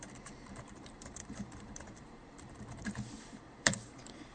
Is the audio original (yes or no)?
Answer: no